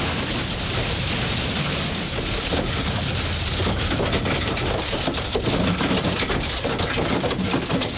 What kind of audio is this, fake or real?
real